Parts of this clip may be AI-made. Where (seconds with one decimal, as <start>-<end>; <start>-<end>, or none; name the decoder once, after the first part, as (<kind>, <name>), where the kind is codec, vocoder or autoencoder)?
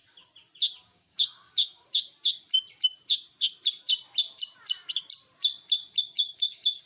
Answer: 0.8-1.9 (codec, DAC); 6.0-6.9